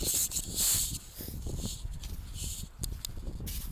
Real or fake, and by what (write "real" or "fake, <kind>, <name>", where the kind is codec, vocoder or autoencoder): real